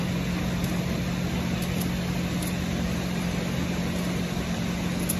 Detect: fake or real real